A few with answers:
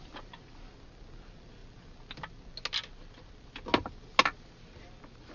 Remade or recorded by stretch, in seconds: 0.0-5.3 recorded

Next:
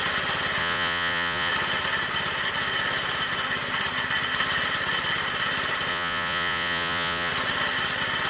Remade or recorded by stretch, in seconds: 0.0-0.6 recorded; 0.6-1.5 remade; 1.5-5.9 recorded; 5.9-7.3 remade; 7.3-8.3 recorded

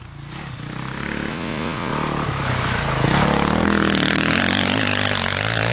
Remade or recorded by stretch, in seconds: 0.0-1.3 recorded; 1.3-1.9 remade; 1.9-5.7 recorded

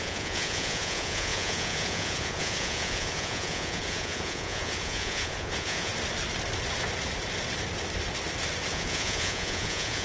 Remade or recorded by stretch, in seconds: 0.0-5.9 remade; 5.9-8.7 recorded; 8.7-10.0 remade

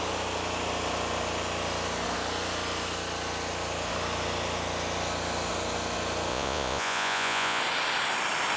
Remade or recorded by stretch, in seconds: 0.0-6.3 recorded; 6.3-7.6 remade; 7.6-8.6 recorded

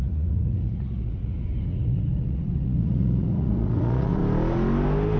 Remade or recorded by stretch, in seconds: 0.0-4.2 remade; 4.2-5.2 recorded

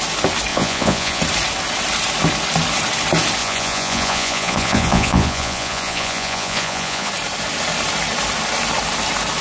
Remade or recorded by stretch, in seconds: 0.0-0.5 recorded; 0.5-1.2 remade; 1.2-3.4 recorded; 3.4-7.1 remade; 7.1-9.4 recorded